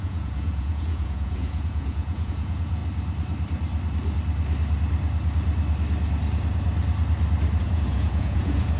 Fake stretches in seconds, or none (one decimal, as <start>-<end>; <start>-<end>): 0.0-2.8; 7.6-8.8